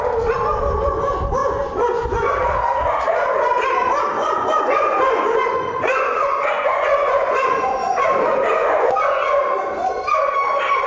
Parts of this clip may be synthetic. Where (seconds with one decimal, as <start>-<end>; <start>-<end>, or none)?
1.4-2.3; 4.2-9.4

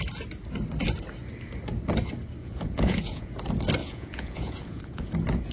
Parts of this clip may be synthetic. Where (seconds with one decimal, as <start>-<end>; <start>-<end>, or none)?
2.4-3.3; 3.8-5.1

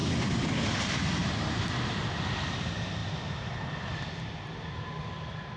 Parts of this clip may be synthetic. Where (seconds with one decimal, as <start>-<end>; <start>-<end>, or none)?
none

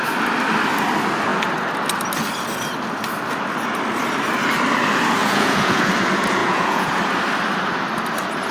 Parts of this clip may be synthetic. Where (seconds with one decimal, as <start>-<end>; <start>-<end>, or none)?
5.2-5.9; 6.4-7.0

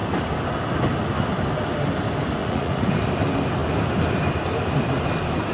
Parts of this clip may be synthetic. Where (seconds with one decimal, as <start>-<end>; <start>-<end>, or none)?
2.4-2.9

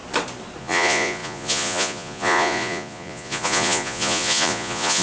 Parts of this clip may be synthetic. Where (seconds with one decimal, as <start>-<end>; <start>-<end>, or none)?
0.6-5.0